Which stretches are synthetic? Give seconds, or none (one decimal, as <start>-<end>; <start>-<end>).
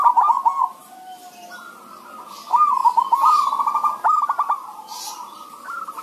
none